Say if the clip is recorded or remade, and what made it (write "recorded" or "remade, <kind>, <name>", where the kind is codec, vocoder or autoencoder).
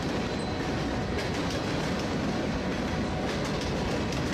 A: recorded